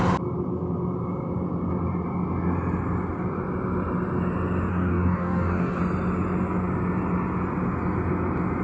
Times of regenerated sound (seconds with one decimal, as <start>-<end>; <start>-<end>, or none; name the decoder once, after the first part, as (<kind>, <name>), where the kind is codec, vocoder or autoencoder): 4.7-5.8 (codec, DAC)